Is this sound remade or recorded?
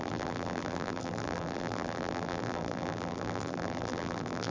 remade